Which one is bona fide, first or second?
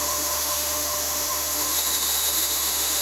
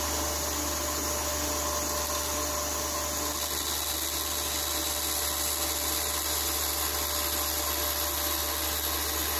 second